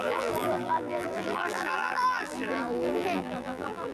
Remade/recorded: remade